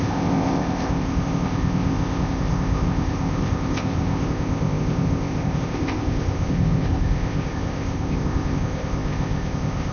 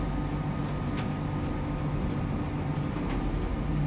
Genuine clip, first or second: second